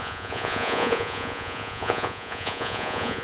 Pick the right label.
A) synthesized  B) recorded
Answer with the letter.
A